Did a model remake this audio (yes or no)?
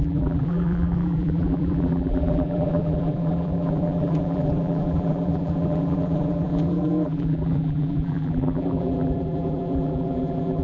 yes